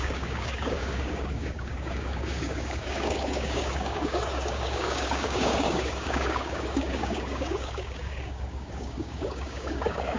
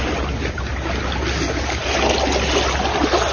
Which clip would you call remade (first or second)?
first